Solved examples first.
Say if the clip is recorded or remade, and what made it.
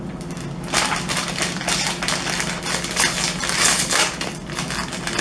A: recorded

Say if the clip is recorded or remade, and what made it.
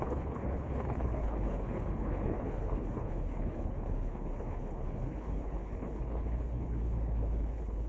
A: remade, codec, HILCodec